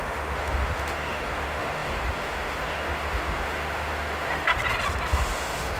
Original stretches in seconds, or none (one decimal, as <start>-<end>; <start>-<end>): 4.5-5.1